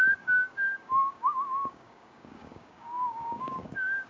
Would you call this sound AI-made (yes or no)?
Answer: yes